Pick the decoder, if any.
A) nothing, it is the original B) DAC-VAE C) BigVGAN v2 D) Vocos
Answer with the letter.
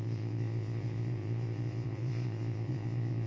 D